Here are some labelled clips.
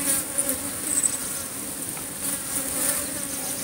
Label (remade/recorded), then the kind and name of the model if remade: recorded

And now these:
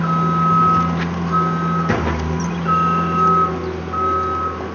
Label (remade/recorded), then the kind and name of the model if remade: recorded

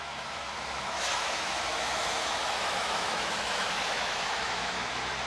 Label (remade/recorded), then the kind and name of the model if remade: remade, autoencoder, DAC-VAE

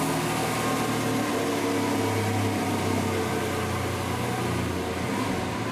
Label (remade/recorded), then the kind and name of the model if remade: recorded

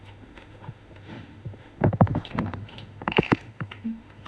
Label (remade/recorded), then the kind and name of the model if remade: remade, autoencoder, DAC-VAE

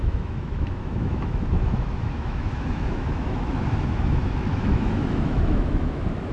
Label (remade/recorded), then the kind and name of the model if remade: remade, autoencoder, DAC-VAE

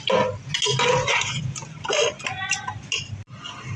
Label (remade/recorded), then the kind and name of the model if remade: recorded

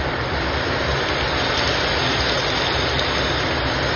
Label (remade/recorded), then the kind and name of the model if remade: recorded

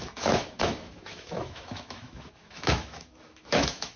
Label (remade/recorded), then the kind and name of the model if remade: remade, autoencoder, DAC-VAE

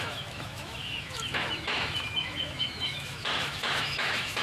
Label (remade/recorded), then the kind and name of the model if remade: remade, autoencoder, DAC-VAE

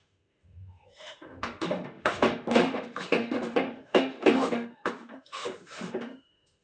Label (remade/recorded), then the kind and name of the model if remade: remade, autoencoder, DAC-VAE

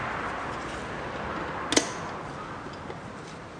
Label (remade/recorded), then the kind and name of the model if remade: recorded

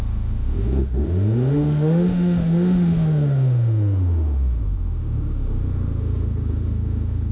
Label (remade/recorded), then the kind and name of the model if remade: remade, autoencoder, DAC-VAE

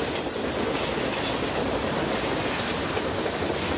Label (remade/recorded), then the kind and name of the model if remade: recorded